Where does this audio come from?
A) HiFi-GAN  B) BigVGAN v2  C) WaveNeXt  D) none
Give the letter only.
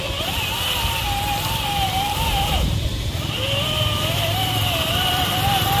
B